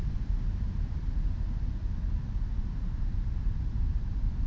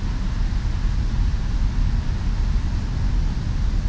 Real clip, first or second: second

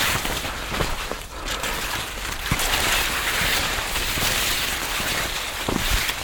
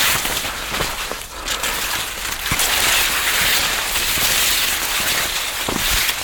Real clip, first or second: second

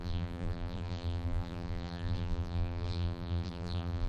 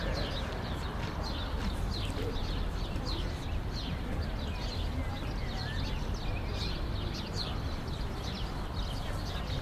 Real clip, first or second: second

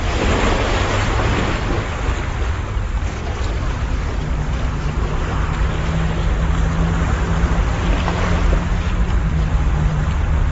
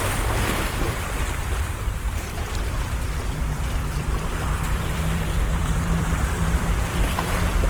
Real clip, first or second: first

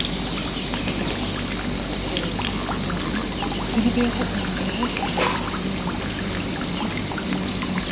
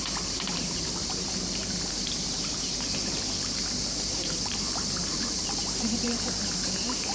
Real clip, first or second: first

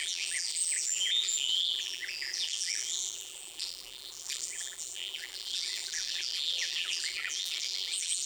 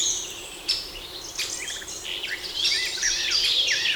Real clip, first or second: second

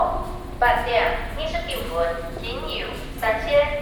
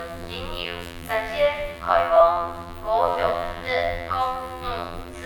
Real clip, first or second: first